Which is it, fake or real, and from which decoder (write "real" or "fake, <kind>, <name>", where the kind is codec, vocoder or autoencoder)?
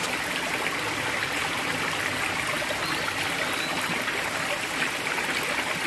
real